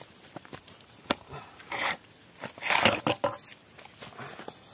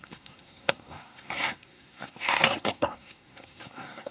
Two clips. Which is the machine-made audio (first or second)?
second